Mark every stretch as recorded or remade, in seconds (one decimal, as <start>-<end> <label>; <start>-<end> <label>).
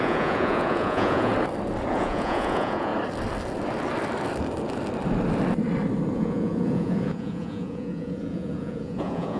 0.0-1.3 remade; 1.3-1.9 recorded; 1.9-2.9 remade; 2.9-6.1 recorded; 6.1-9.4 remade